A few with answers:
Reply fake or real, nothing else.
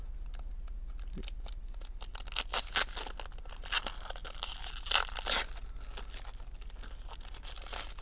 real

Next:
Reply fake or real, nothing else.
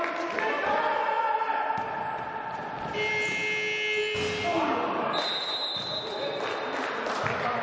real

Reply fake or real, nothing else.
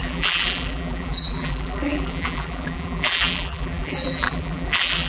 fake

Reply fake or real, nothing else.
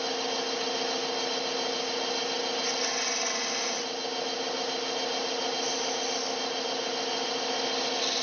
real